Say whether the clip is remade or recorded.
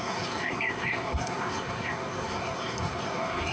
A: remade